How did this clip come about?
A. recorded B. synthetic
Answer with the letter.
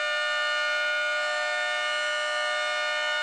A